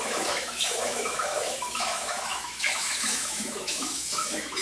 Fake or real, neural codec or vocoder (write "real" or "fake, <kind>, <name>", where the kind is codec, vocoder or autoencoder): fake, autoencoder, DAC-VAE